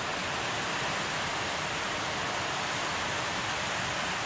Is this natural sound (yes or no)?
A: yes